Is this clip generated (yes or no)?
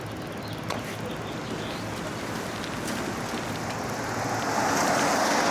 no